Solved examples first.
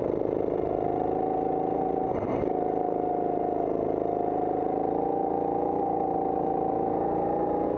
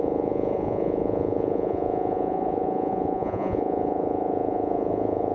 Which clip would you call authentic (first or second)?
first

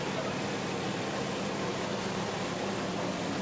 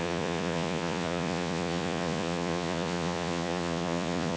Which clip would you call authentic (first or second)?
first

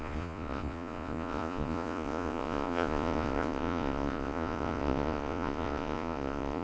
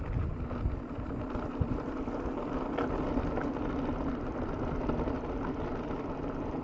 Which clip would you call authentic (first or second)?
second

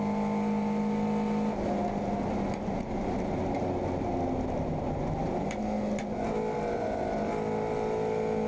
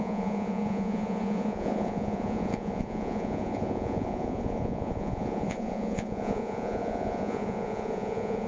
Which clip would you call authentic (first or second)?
first